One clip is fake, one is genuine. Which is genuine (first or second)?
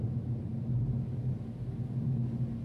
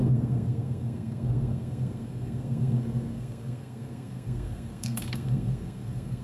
first